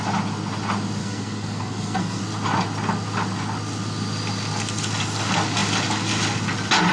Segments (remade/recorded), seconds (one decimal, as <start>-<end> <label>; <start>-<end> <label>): 0.0-1.0 recorded; 1.0-2.2 remade; 2.2-6.9 recorded